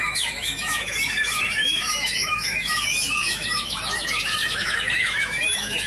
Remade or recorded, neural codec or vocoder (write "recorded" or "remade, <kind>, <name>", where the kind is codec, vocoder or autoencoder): remade, autoencoder, DAC-VAE